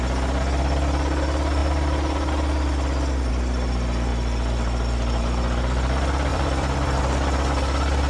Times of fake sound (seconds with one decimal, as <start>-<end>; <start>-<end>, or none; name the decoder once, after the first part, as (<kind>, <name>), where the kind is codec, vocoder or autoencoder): 6.3-7.0 (vocoder, BigVGAN v2)